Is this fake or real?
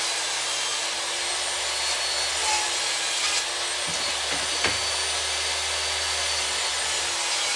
real